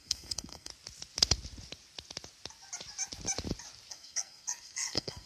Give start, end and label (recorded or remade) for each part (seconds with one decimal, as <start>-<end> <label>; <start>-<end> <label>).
0.0-0.7 remade; 0.7-3.9 recorded; 3.9-5.3 remade